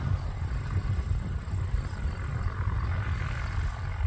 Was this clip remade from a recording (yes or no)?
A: no